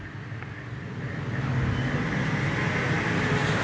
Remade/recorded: recorded